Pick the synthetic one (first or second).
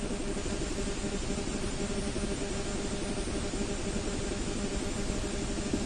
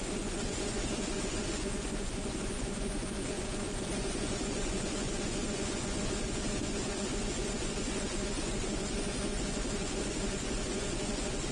second